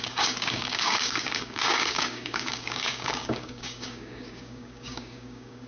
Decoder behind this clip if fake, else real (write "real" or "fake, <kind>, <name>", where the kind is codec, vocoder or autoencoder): fake, codec, DAC